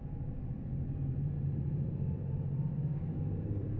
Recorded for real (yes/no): no